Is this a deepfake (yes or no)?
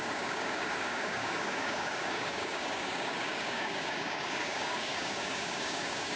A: yes